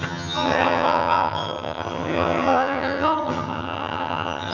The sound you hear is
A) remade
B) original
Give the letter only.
A